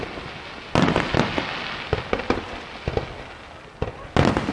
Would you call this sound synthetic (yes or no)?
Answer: no